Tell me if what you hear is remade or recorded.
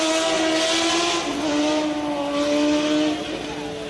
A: recorded